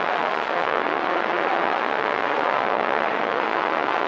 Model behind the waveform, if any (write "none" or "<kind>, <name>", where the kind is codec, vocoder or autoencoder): vocoder, Vocos